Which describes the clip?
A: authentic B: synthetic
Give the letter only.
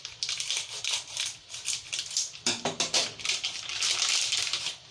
A